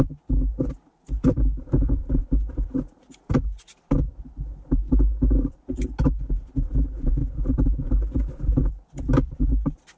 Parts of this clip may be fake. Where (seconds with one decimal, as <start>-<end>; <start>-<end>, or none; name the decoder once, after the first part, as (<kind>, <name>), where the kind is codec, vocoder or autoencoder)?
none